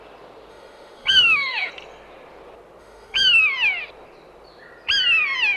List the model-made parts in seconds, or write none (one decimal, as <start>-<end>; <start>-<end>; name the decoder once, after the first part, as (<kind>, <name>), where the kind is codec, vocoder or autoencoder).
0.5-1.7 (autoencoder, DAC-VAE); 2.8-3.3